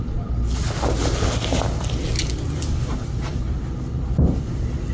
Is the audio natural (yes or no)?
yes